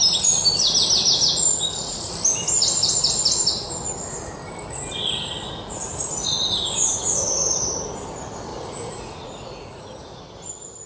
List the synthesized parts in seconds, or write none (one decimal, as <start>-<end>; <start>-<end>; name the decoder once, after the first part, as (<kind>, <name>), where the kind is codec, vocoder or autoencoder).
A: 1.5-2.1 (vocoder, Vocos); 8.5-10.2